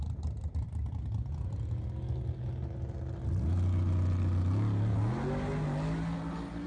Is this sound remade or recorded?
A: recorded